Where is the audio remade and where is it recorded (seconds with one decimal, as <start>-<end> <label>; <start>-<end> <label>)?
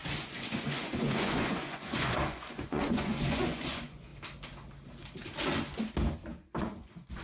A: 0.0-4.1 remade; 4.1-6.6 recorded; 6.6-7.2 remade